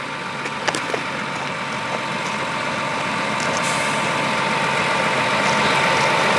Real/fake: real